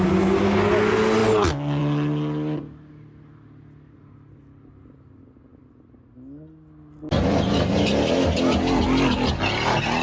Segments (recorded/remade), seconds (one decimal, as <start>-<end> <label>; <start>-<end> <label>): 0.0-10.0 recorded